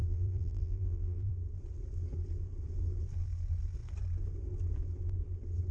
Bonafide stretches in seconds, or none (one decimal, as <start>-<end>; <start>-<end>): 1.3-5.7